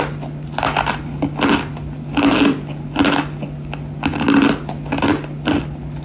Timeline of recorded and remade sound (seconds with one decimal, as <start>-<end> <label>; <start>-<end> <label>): 0.0-6.0 recorded